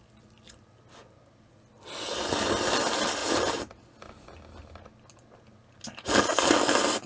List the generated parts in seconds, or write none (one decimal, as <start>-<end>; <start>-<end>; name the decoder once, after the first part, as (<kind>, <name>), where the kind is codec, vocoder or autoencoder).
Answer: 3.2-3.8 (vocoder, BigVGAN v2)